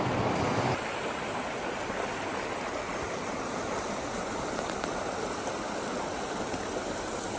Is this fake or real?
real